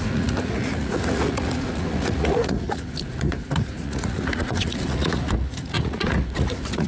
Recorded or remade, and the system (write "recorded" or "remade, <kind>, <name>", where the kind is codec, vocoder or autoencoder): remade, vocoder, Vocos